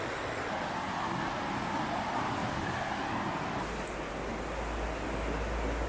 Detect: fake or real real